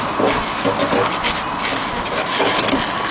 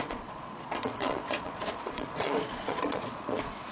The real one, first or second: first